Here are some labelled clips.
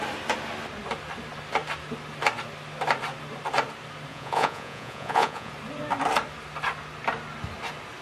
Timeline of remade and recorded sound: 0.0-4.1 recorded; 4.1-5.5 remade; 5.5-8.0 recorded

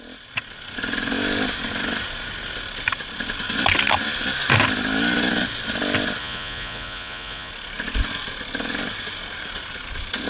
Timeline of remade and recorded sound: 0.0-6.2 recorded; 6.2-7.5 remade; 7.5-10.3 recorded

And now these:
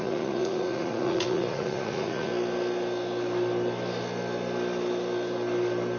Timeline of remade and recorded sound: 0.0-2.3 remade; 2.3-6.0 recorded

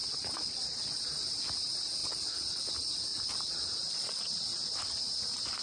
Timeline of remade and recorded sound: 0.0-1.1 remade; 1.1-3.1 recorded; 3.1-4.7 remade; 4.7-5.6 recorded

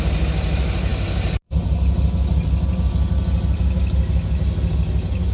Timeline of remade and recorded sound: 0.0-5.3 recorded

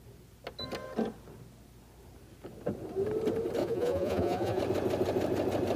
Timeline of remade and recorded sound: 0.0-3.6 recorded; 3.6-4.6 remade; 4.6-5.8 recorded

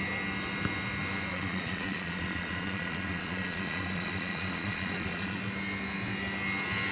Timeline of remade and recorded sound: 0.0-1.3 recorded; 1.3-5.4 remade; 5.4-6.9 recorded

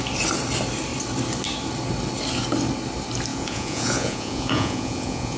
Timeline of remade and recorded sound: 0.0-3.3 recorded; 3.3-5.4 remade